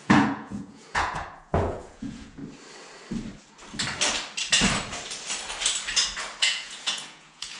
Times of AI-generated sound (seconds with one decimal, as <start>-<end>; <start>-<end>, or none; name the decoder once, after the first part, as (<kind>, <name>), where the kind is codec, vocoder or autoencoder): 0.0-2.4 (vocoder, Vocos); 6.4-7.6